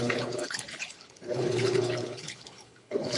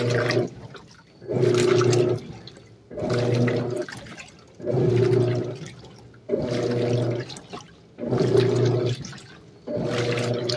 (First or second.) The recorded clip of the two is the second